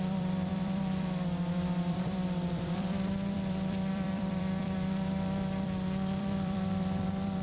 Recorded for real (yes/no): no